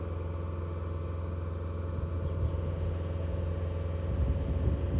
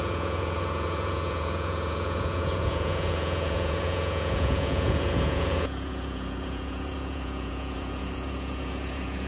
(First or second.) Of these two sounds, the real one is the first